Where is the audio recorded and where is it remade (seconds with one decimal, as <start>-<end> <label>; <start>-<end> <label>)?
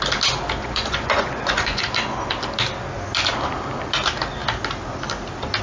0.0-0.6 recorded; 0.6-1.8 remade; 1.8-5.6 recorded